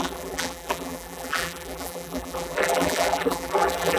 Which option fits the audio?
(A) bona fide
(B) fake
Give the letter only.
B